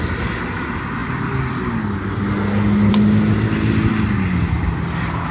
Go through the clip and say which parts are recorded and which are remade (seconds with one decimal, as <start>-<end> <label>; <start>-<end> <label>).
0.0-5.3 recorded